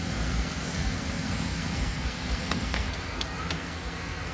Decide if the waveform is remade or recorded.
remade